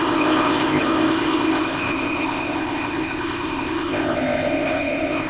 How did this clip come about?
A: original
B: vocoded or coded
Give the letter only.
B